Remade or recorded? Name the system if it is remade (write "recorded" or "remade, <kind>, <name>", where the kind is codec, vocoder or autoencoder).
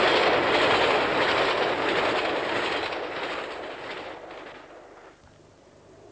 recorded